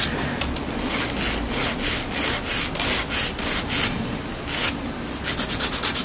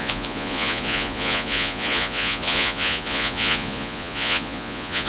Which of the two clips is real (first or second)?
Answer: first